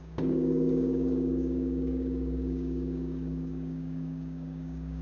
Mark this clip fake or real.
fake